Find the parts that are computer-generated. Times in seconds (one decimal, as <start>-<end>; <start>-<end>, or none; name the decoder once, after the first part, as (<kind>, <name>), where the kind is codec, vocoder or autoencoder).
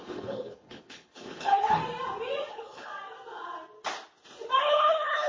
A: 0.0-1.8 (codec, HILCodec); 2.5-2.9; 4.6-5.3